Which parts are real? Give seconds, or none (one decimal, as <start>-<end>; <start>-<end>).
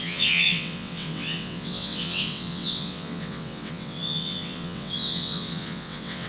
none